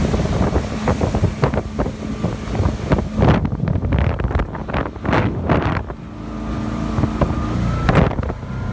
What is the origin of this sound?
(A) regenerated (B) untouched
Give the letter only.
B